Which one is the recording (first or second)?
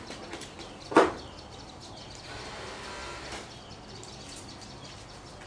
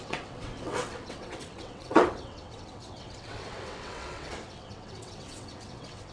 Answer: first